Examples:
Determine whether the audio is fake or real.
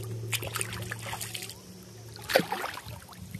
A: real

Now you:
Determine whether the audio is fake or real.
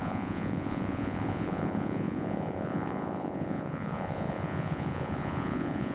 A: fake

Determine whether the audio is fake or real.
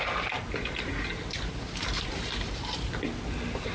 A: real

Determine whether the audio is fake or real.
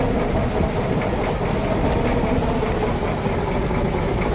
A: real